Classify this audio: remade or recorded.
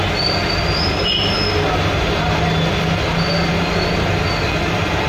recorded